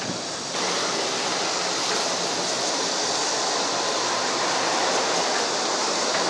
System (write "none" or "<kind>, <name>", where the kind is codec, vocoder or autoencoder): vocoder, BigVGAN v2